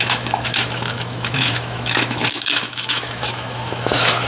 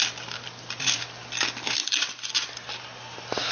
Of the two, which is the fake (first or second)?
first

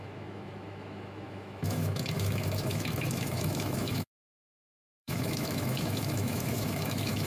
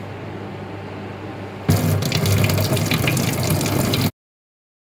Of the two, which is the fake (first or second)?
first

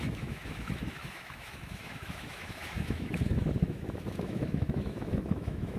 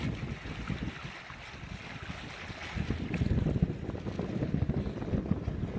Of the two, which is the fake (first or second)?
first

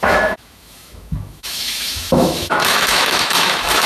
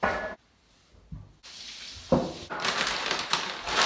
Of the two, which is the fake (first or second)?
first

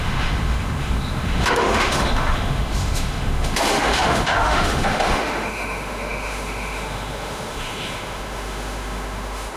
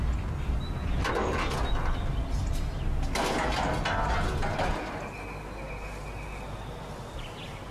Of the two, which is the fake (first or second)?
first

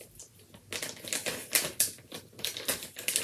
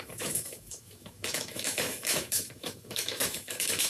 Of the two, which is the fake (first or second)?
second